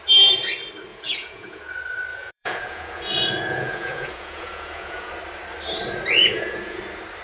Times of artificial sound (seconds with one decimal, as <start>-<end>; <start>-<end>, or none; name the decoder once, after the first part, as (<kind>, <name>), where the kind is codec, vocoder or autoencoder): 0.9-1.6 (vocoder, Vocos); 2.1-5.1; 6.2-6.8